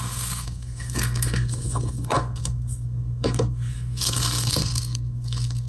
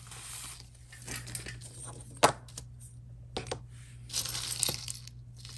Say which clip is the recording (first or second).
second